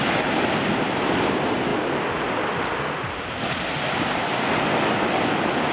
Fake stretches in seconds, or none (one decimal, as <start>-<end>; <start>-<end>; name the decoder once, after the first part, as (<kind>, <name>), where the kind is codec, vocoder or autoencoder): none